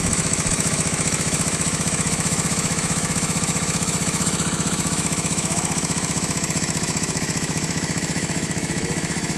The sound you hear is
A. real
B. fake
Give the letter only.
B